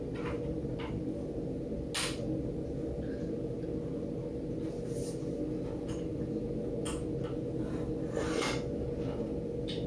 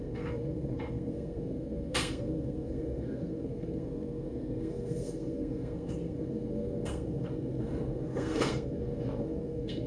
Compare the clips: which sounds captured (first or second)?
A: first